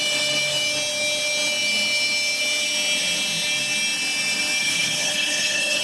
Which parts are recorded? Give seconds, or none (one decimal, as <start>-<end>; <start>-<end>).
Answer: 0.0-4.6